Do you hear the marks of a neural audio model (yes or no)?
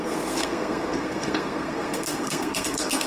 yes